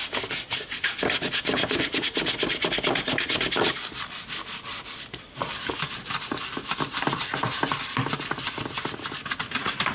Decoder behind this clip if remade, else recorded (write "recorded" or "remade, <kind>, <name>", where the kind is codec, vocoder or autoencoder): recorded